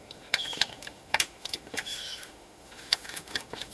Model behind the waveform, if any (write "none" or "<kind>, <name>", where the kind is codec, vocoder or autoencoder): autoencoder, DAC-VAE